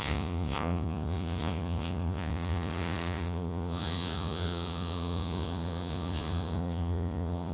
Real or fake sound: fake